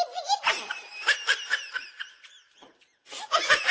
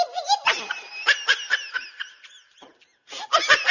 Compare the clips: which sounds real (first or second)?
second